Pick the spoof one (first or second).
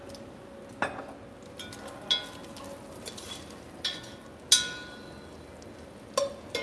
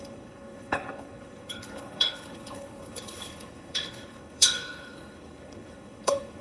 second